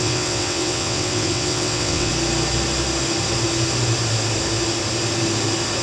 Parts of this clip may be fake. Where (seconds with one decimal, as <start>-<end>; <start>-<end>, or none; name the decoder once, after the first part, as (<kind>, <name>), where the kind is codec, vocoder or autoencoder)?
0.0-2.1 (vocoder, WaveNeXt)